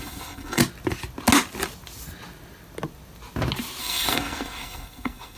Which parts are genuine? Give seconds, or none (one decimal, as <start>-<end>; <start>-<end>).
0.6-3.8